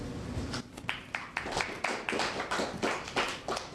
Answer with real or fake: fake